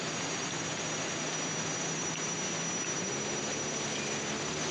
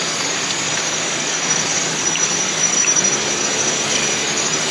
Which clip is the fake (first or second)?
second